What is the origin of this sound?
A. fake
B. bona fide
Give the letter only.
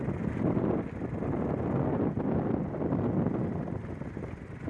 B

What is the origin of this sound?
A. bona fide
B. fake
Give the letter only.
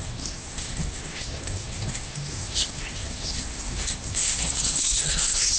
B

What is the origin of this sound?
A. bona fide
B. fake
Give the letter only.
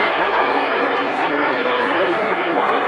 B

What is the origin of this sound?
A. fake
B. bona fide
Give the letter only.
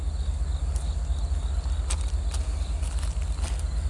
B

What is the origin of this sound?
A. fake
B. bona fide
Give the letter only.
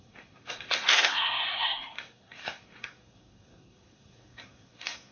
A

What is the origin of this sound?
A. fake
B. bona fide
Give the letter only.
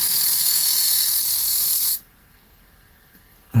A